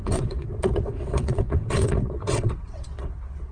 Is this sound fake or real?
fake